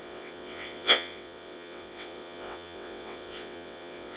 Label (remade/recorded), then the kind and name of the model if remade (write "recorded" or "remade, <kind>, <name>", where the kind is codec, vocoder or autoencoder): remade, vocoder, WaveNeXt